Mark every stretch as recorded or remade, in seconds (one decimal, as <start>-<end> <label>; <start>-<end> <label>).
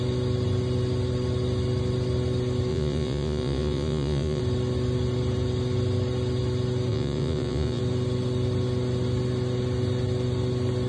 0.0-2.7 recorded; 2.7-4.4 remade; 4.4-6.9 recorded; 6.9-7.8 remade; 7.8-10.9 recorded